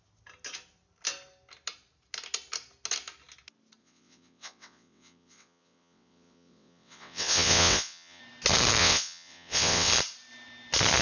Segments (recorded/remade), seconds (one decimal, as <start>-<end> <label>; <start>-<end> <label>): 0.0-3.8 recorded; 3.8-8.2 remade; 8.2-8.8 recorded; 8.8-9.9 remade; 9.9-11.0 recorded